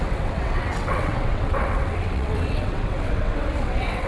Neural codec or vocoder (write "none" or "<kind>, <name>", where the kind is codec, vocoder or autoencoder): vocoder, WaveNeXt